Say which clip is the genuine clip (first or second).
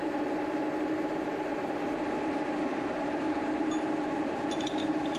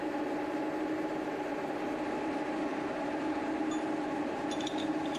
second